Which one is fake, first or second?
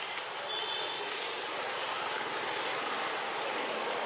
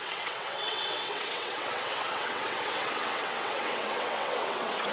second